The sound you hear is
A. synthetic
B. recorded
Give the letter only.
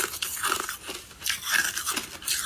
B